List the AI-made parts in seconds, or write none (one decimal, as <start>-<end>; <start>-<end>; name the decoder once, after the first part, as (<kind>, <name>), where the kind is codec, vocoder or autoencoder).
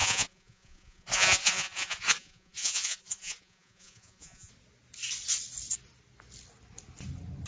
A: 0.0-4.5 (vocoder, Vocos)